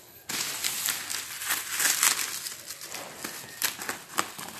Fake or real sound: real